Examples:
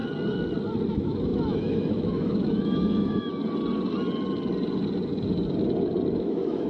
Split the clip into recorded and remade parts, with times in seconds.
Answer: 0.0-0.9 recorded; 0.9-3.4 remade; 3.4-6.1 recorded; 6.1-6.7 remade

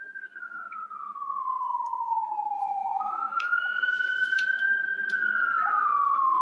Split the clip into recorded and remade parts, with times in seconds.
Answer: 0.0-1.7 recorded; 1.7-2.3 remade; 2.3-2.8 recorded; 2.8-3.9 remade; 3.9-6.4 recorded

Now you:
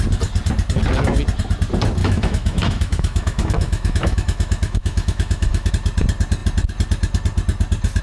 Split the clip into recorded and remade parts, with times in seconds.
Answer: 0.0-2.0 recorded; 2.0-5.7 remade; 5.7-8.0 recorded

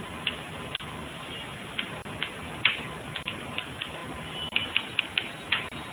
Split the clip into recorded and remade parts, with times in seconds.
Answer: 0.0-5.9 recorded